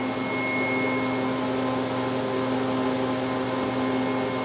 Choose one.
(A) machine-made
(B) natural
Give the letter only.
B